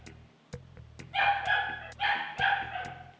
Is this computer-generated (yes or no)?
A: no